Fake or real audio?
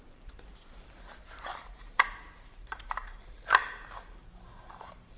fake